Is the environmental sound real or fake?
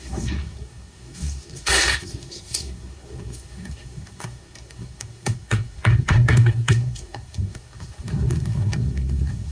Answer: fake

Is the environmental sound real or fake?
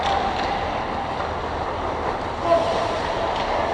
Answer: real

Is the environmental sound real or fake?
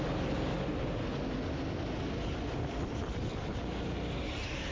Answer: real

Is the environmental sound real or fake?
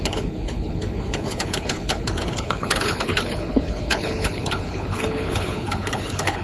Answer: fake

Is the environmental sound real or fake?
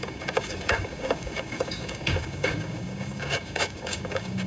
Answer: fake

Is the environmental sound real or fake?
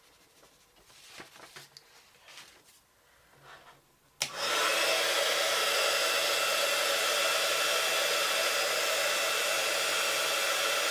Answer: real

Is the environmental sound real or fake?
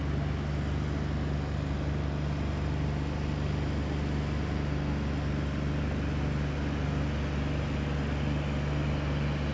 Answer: real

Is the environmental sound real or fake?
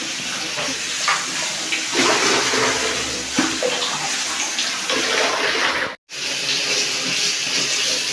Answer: real